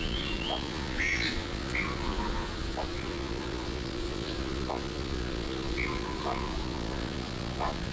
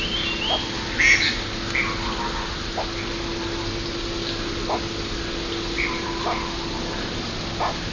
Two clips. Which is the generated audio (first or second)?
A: first